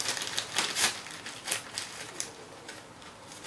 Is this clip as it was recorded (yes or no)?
yes